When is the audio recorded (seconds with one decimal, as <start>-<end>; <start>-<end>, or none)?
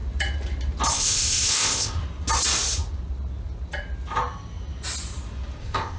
0.0-0.9; 2.0-5.6